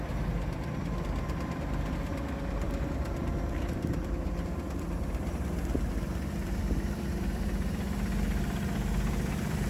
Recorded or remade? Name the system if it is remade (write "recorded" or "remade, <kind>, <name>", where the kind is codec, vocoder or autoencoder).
remade, vocoder, BigVGAN v2